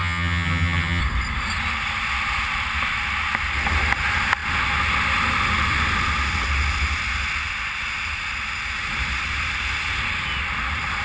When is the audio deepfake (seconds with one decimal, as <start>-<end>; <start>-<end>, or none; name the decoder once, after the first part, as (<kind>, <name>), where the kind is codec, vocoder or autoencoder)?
0.0-1.0 (vocoder, HiFi-GAN)